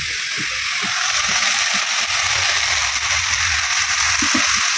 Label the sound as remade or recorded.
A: recorded